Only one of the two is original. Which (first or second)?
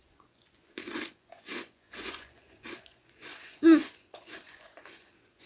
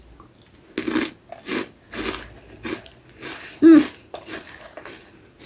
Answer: second